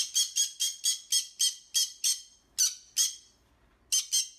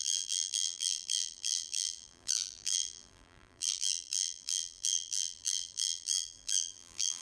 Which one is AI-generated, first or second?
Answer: second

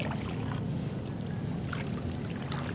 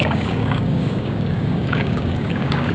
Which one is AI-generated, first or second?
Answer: second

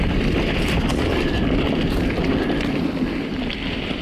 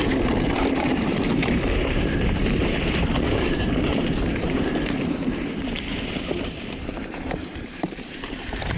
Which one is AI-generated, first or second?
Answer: second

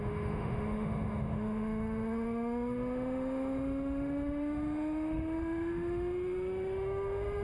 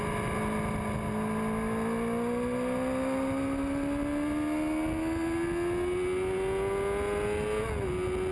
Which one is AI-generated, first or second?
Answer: first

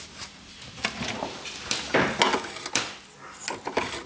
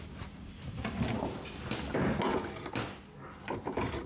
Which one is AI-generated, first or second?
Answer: second